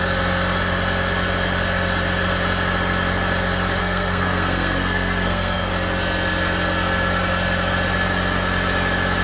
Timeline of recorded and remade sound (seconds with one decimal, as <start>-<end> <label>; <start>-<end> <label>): 0.0-3.8 recorded; 3.8-5.7 remade; 5.7-9.2 recorded